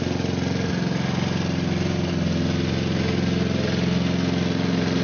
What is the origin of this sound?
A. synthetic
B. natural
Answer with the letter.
B